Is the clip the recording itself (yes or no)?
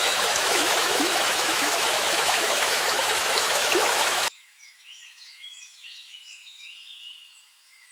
no